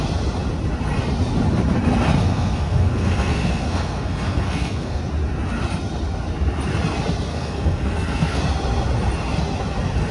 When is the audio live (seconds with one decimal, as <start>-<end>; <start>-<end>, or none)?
0.0-2.2; 5.0-7.3; 8.4-10.1